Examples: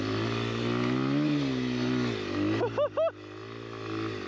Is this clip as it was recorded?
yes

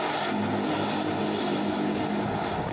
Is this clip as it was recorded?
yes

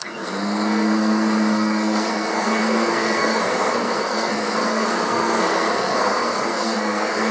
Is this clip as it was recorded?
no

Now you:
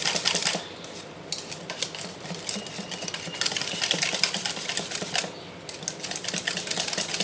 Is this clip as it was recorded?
yes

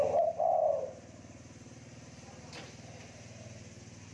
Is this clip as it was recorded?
yes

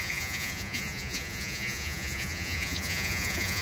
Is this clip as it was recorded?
no